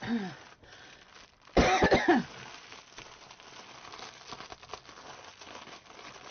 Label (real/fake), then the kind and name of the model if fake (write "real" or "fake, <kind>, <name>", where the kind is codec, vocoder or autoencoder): real